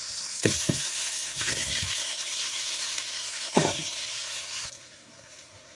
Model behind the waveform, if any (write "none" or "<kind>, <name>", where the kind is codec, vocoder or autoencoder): codec, SNAC